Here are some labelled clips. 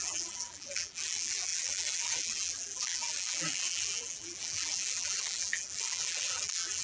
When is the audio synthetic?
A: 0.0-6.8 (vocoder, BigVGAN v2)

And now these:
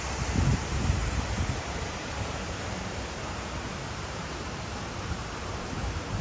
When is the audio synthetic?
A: 0.5-4.2 (vocoder, BigVGAN v2); 5.2-6.2

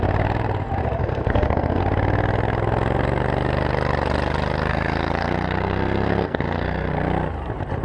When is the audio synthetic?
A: 1.0-1.8 (codec, SNAC); 4.7-6.9

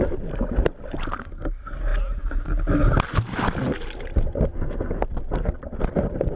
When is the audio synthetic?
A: none

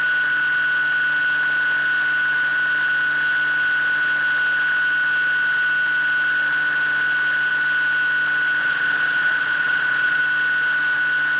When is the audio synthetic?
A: 8.6-10.2 (vocoder, Vocos)

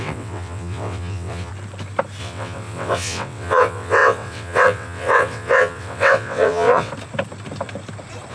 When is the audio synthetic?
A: 0.0-1.5 (vocoder, WaveNeXt); 2.2-6.9

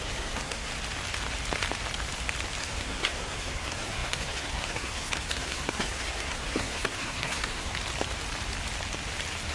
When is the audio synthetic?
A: 0.0-0.7 (codec, SNAC); 2.6-7.7